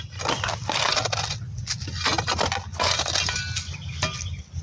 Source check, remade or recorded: recorded